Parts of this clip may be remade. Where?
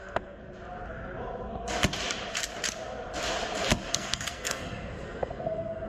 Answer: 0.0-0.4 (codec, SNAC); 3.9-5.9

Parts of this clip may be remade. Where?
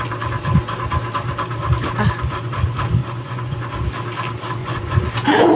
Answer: 3.0-3.7 (vocoder, Vocos); 4.6-5.6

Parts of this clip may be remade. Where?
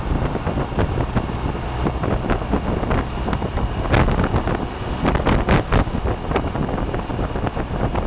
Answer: none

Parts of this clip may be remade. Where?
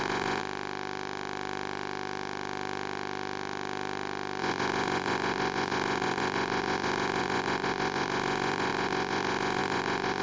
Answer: 0.0-0.4 (vocoder, Vocos); 4.4-10.2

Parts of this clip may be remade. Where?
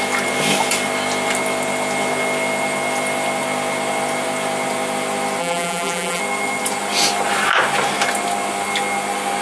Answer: 5.4-6.2 (vocoder, BigVGAN v2)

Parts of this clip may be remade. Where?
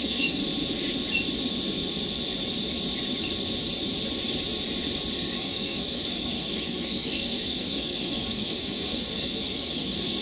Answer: 0.0-0.4 (codec, SNAC); 5.3-10.2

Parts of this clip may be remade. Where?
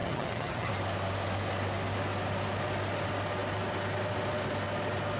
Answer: 0.0-0.7 (vocoder, HiFi-GAN)